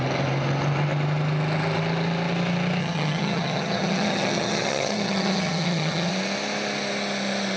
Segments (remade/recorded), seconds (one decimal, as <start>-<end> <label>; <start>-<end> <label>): 0.0-2.8 recorded; 2.8-6.1 remade; 6.1-7.6 recorded